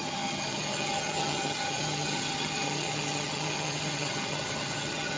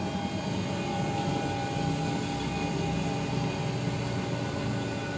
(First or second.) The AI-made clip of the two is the first